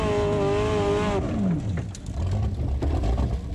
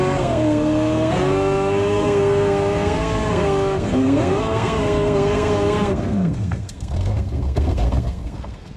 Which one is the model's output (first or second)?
second